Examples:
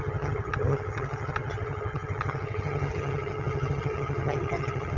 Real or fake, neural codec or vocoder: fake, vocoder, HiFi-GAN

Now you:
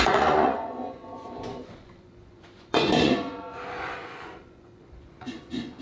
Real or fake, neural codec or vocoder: fake, vocoder, Vocos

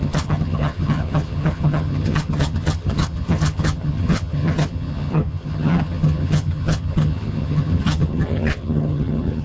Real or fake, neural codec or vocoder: fake, vocoder, HiFi-GAN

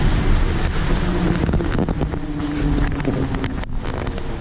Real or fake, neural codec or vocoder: real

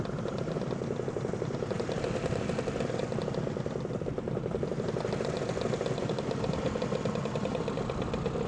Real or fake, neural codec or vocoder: real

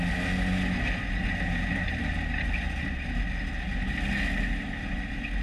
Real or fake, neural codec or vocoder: real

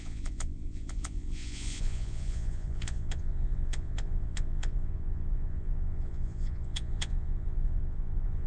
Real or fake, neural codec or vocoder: fake, vocoder, Vocos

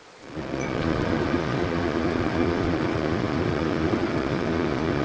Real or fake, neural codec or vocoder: fake, vocoder, Vocos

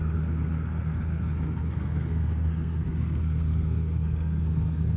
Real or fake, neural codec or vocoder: fake, codec, SNAC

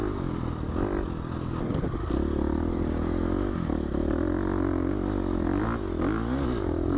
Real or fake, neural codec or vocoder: real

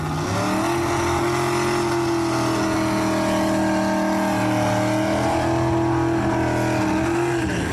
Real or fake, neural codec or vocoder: real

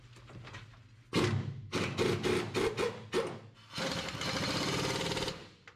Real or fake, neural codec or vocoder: real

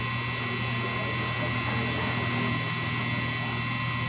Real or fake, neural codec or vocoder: real